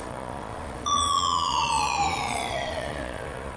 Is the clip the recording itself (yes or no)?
no